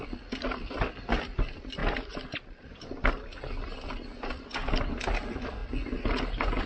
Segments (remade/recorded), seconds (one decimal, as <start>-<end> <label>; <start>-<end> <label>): 0.0-6.7 recorded